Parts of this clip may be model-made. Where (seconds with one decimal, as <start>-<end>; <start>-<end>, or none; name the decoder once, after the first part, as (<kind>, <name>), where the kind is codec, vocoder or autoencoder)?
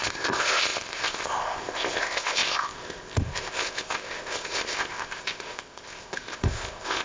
0.0-7.0 (codec, ZipCodec)